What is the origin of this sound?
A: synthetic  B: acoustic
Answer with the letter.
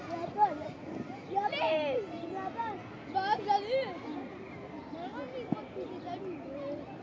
B